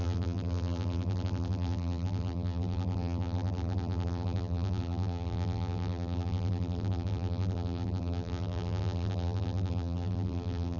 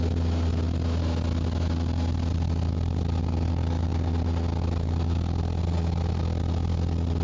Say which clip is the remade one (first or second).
first